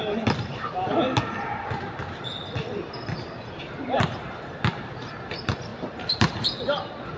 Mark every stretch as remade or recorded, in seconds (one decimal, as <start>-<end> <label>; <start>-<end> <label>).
0.0-5.7 recorded; 5.7-7.2 remade